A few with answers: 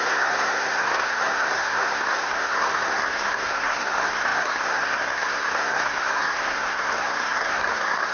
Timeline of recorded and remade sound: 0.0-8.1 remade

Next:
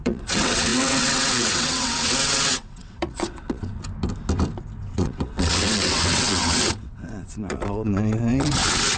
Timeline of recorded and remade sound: 0.0-3.8 remade; 3.8-4.9 recorded; 4.9-9.0 remade

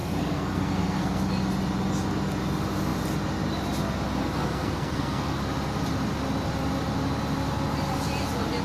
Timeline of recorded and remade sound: 0.0-1.2 remade; 1.2-4.2 recorded; 4.2-5.4 remade; 5.4-8.6 recorded

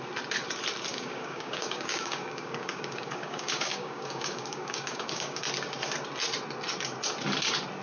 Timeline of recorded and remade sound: 0.0-0.9 recorded; 0.9-5.4 remade; 5.4-7.8 recorded

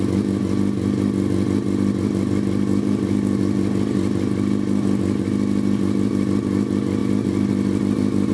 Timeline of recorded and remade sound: 0.0-8.3 recorded

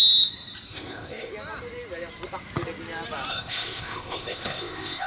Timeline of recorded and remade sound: 0.0-0.7 recorded; 0.7-1.3 remade; 1.3-3.3 recorded; 3.3-5.1 remade

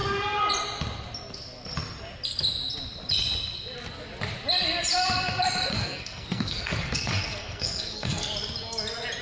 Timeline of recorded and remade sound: 0.0-5.7 recorded; 5.7-8.3 remade; 8.3-9.2 recorded